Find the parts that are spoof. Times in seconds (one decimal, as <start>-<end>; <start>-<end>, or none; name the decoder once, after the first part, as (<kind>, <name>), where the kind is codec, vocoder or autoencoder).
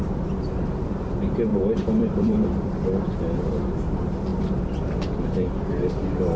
1.5-3.2 (vocoder, BigVGAN v2); 4.3-5.5